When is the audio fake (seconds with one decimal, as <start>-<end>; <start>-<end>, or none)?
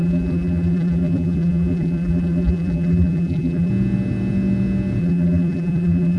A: 0.0-3.7; 5.0-6.2